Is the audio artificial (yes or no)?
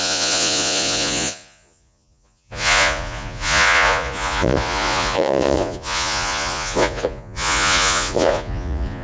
yes